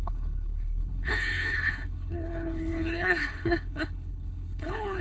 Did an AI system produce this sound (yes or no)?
yes